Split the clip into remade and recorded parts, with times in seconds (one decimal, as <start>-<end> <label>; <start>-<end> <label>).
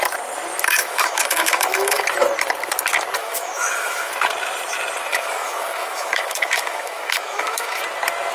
0.0-0.8 recorded; 0.8-2.0 remade; 2.0-3.2 recorded; 3.2-4.1 remade; 4.1-5.1 recorded; 5.1-7.8 remade; 7.8-8.3 recorded